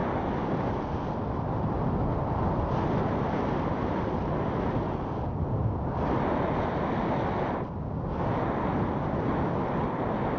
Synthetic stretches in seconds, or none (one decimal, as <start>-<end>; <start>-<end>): none